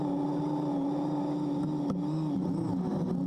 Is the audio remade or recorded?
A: recorded